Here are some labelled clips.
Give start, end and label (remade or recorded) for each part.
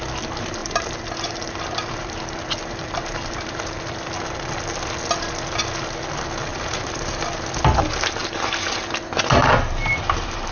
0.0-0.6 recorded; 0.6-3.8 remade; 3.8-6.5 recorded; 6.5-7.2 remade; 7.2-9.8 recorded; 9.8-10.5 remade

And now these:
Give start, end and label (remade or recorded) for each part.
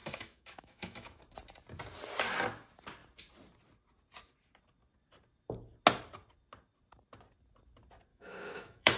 0.0-1.2 remade; 1.2-8.1 recorded; 8.1-9.0 remade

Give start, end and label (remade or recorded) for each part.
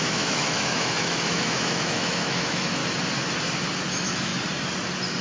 0.0-2.8 remade; 2.8-3.9 recorded; 3.9-4.3 remade; 4.3-5.2 recorded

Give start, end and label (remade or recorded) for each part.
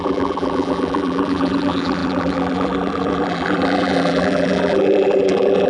0.0-5.7 remade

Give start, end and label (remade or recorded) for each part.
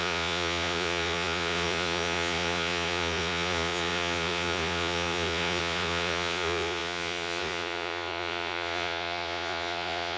0.0-10.2 remade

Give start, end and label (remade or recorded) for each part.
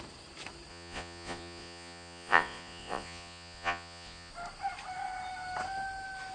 0.0-0.7 recorded; 0.7-4.3 remade; 4.3-6.3 recorded